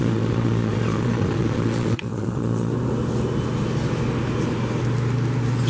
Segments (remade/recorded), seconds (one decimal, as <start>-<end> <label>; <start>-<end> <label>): 0.0-2.7 remade; 2.7-5.7 recorded